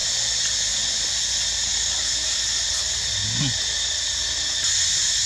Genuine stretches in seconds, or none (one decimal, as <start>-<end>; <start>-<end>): 0.0-5.3

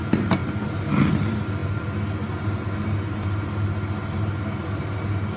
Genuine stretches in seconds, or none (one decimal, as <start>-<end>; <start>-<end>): 0.0-5.4

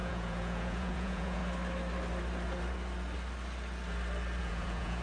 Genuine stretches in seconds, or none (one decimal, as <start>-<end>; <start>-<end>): 1.4-4.4

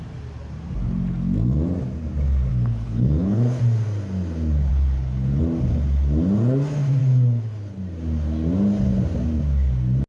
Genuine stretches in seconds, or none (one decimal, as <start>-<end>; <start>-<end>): 0.0-2.5; 3.6-4.7; 5.4-7.0; 7.8-10.1

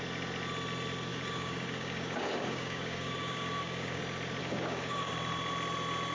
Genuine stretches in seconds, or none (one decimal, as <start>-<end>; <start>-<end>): 0.0-1.1; 4.0-4.4; 5.1-6.1

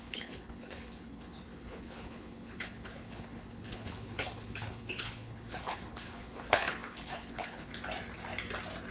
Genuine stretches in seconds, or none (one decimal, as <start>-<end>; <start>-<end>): 7.7-8.9

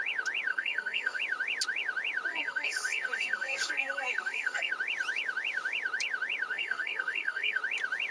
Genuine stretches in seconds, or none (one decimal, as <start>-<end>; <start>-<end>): 0.0-0.5; 1.2-2.3; 4.7-6.5; 7.6-8.1